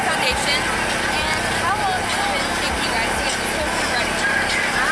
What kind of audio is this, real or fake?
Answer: real